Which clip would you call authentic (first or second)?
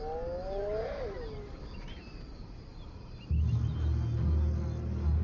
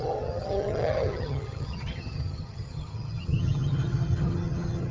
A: first